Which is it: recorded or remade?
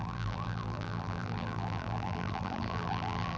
remade